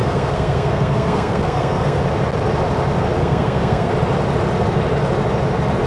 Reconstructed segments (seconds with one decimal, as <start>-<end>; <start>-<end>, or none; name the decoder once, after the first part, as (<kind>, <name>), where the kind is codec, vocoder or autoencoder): 0.0-2.0 (codec, SNAC); 3.2-3.9